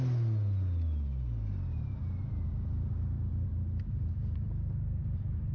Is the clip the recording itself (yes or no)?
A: yes